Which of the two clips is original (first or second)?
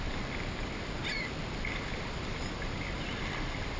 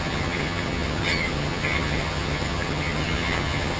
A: first